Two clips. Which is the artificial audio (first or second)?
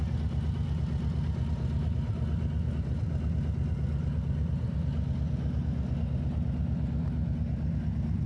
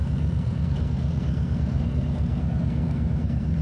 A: second